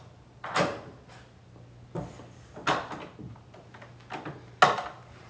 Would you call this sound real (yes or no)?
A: yes